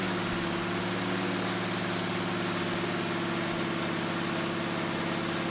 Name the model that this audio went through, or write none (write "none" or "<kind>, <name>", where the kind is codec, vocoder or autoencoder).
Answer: none